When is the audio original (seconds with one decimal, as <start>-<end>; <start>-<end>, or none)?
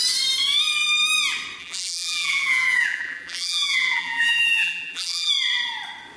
0.0-1.6; 5.3-6.2